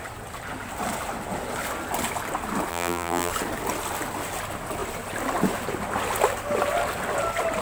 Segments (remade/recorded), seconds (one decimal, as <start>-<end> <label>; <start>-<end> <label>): 0.0-2.7 recorded; 2.7-3.3 remade; 3.3-7.6 recorded